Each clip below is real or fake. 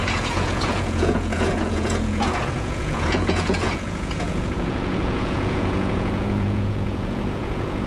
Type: fake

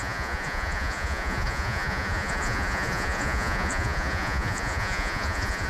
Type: fake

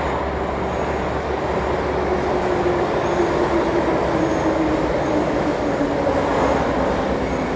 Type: real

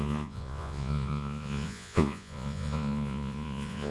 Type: fake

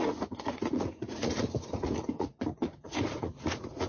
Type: fake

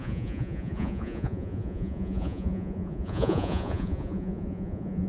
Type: fake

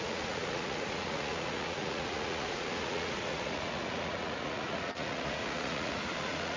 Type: fake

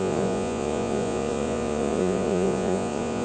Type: fake